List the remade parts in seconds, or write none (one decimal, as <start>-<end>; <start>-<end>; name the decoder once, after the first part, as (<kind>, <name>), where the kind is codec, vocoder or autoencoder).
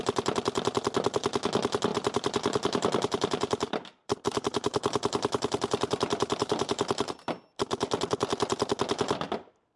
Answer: 1.9-7.1 (vocoder, BigVGAN v2)